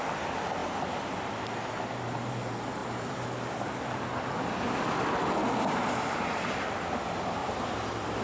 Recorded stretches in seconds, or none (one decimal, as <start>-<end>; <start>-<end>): 0.0-0.6; 1.5-2.8; 6.3-7.4